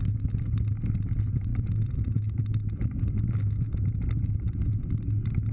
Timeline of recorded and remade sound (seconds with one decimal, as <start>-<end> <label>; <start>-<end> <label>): 0.0-5.5 recorded